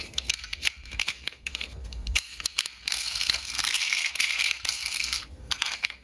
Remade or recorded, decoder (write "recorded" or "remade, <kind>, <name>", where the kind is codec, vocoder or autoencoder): remade, codec, SNAC